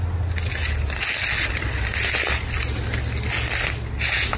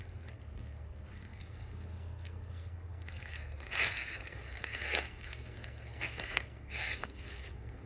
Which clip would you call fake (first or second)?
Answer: second